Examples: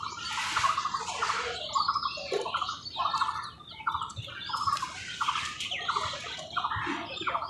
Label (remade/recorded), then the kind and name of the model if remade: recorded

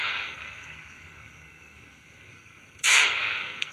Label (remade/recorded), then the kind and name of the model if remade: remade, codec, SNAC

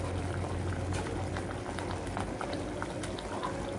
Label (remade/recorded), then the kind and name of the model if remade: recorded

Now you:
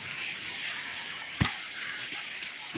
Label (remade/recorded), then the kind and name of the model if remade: remade, codec, DAC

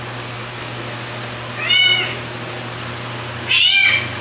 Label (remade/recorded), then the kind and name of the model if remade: recorded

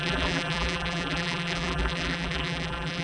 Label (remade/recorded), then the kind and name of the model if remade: remade, vocoder, BigVGAN v2